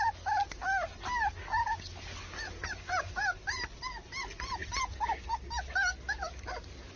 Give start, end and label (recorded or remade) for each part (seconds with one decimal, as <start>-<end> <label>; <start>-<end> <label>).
0.0-7.0 recorded